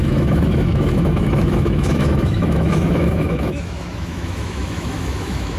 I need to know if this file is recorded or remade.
remade